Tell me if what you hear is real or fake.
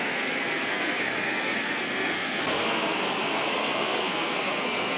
fake